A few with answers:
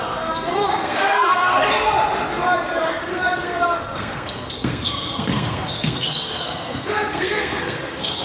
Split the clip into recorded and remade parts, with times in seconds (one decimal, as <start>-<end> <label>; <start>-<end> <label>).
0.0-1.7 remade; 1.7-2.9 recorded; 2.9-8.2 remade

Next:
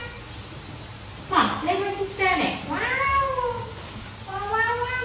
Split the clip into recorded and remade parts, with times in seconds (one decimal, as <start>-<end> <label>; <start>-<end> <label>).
0.0-3.1 recorded; 3.1-4.1 remade; 4.1-5.0 recorded

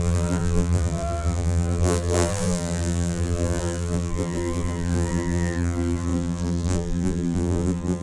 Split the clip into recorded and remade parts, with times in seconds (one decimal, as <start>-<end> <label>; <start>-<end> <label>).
0.0-8.0 remade

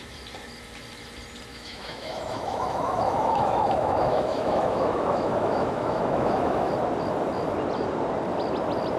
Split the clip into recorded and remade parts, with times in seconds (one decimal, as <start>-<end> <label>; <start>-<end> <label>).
0.0-1.5 recorded; 1.5-6.7 remade; 6.7-9.0 recorded

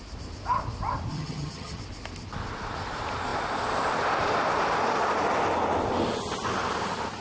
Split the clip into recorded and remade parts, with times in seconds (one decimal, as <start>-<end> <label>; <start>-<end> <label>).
0.0-1.1 recorded; 1.1-1.8 remade; 1.8-7.2 recorded